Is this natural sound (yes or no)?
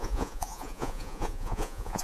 no